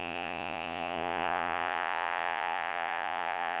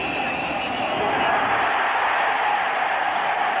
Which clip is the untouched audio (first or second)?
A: second